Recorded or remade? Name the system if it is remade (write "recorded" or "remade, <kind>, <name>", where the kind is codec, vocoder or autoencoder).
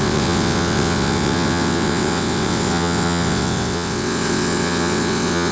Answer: remade, vocoder, WaveNeXt